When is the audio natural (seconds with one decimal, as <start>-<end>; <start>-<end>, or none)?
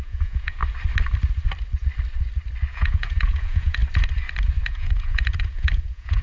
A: 0.6-2.7; 3.8-4.6